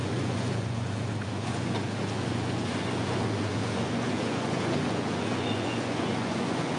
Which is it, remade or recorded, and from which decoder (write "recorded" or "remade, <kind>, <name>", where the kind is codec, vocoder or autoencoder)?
remade, vocoder, Vocos